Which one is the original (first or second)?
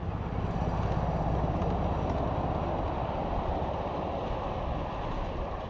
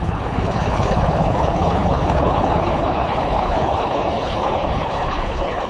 first